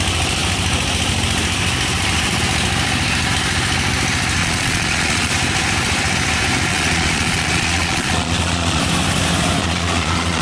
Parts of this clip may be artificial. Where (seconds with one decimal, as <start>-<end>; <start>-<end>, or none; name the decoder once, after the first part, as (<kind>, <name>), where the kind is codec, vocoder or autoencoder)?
4.4-5.3 (vocoder, Vocos); 6.7-8.8; 9.6-10.4